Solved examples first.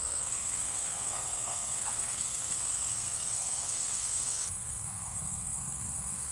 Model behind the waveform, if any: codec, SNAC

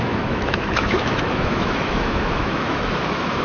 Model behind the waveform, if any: autoencoder, DAC-VAE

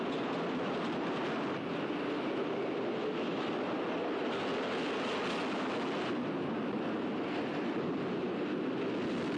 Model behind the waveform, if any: none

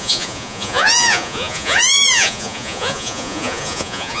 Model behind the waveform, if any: vocoder, Vocos